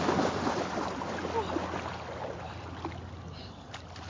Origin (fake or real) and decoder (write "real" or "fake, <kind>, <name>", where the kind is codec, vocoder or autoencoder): real